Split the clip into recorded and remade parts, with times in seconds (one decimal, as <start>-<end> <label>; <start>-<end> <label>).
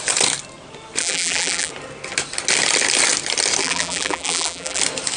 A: 0.0-1.0 recorded; 1.0-1.7 remade; 1.7-3.6 recorded; 3.6-4.8 remade; 4.8-5.2 recorded